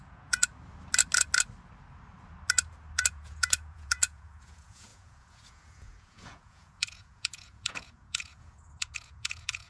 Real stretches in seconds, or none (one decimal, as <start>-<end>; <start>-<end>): 0.5-3.1